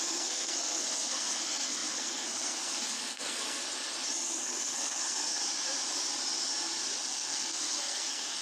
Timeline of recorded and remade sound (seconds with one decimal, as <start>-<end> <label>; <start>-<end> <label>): 0.0-3.6 remade; 3.6-4.3 recorded; 4.3-5.4 remade; 5.4-7.0 recorded; 7.0-8.4 remade